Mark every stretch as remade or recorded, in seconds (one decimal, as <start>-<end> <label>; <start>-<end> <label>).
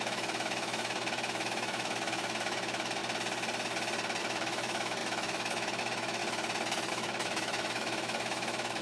0.0-3.0 remade; 3.0-4.2 recorded; 4.2-6.2 remade; 6.2-6.9 recorded; 6.9-8.8 remade